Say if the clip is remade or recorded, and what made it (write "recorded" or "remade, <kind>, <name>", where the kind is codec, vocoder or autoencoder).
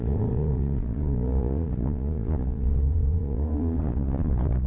remade, vocoder, Vocos